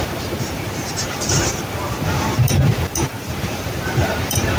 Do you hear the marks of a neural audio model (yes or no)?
yes